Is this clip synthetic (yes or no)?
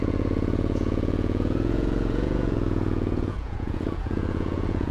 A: yes